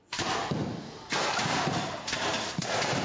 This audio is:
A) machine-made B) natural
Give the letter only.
A